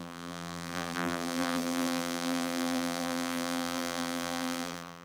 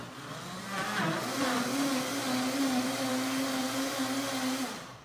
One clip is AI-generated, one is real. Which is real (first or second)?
second